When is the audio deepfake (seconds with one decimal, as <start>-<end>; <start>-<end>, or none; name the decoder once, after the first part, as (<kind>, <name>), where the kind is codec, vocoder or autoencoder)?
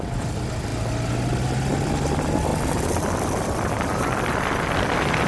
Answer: 2.5-5.3 (vocoder, BigVGAN v2)